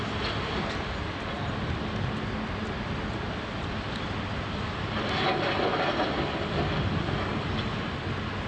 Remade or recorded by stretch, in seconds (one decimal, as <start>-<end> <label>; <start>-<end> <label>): 0.0-5.7 recorded; 5.7-6.9 remade; 6.9-8.5 recorded